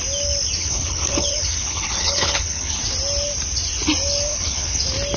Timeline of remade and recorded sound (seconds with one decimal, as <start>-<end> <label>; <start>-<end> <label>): 0.0-0.6 recorded; 0.6-2.8 remade; 2.8-4.3 recorded; 4.3-4.8 remade; 4.8-5.2 recorded